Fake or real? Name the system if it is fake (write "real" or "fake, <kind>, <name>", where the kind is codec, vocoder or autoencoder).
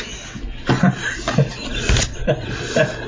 real